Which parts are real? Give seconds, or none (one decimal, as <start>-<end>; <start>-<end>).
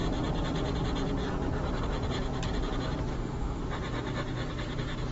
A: 0.0-3.1; 3.6-5.1